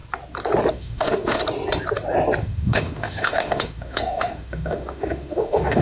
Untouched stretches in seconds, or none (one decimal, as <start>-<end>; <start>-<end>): 0.0-0.7; 1.4-2.4